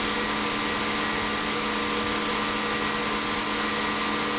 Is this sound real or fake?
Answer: real